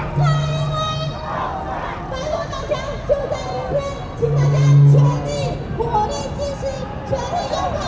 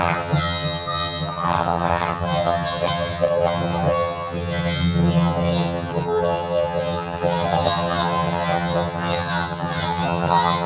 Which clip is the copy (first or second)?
second